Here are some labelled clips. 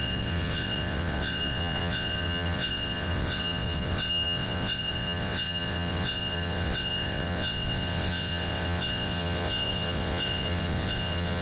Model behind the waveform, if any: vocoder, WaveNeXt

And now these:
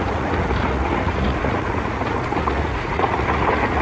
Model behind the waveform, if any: vocoder, Vocos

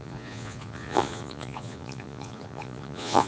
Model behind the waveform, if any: vocoder, Vocos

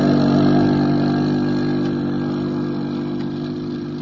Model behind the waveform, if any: none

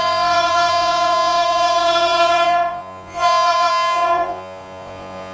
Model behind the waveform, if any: vocoder, Vocos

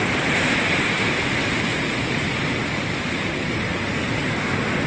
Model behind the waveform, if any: none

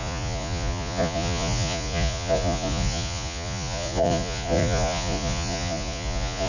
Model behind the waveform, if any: vocoder, Vocos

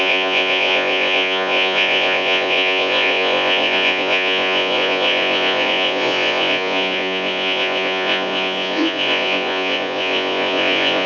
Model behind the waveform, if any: vocoder, Vocos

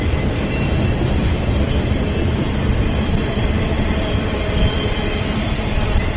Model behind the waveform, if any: vocoder, BigVGAN v2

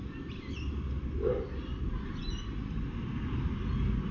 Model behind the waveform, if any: none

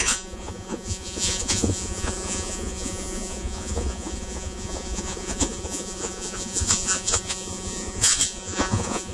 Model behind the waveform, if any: vocoder, Vocos